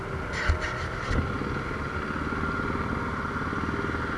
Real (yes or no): yes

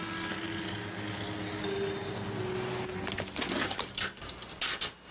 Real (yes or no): yes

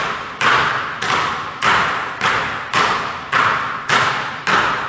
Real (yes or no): yes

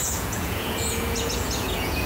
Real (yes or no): no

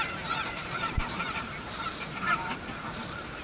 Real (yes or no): no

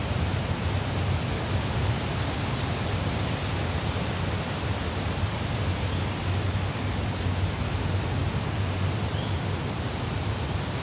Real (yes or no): yes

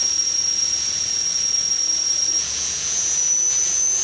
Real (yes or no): no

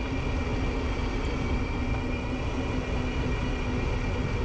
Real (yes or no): yes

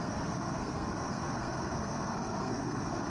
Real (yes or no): no